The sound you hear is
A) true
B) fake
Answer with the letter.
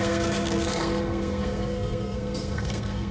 B